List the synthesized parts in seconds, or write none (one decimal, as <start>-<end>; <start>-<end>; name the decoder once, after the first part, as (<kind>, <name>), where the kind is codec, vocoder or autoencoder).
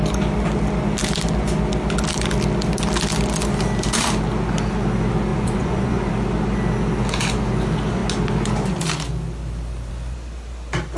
5.3-6.1 (vocoder, Vocos)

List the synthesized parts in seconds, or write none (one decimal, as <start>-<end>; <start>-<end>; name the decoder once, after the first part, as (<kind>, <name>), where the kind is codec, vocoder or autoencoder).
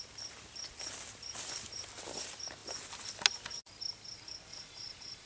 4.5-5.3 (vocoder, Vocos)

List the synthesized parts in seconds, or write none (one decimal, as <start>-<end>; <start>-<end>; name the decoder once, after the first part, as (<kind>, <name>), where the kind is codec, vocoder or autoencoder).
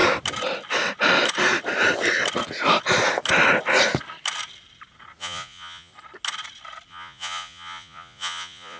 5.2-5.9 (vocoder, Vocos); 6.9-8.8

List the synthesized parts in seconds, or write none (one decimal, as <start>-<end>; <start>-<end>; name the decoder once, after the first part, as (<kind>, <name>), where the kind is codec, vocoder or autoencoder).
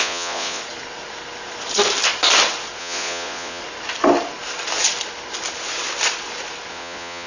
0.0-0.6 (vocoder, Vocos); 2.8-3.6; 6.7-7.3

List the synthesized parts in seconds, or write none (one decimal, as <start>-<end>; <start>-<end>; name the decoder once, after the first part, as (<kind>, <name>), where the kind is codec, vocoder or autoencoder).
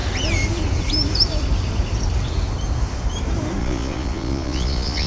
3.6-5.1 (vocoder, Vocos)